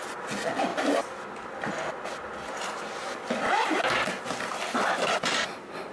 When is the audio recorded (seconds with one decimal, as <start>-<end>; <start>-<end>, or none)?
0.0-5.9